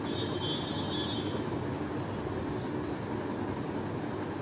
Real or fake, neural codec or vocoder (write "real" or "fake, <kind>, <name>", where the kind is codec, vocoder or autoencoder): real